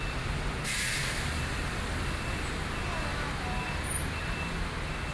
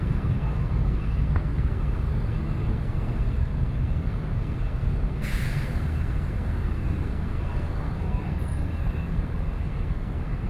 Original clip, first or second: first